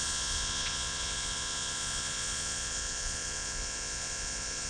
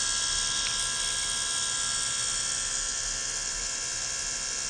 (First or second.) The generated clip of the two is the first